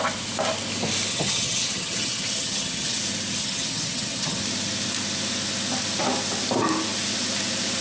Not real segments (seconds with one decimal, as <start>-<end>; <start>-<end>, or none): 1.1-3.0; 3.4-4.4